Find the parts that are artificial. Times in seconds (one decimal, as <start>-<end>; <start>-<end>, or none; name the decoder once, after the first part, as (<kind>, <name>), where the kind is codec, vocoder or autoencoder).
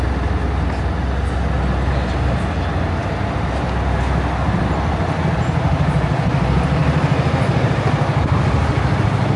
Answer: none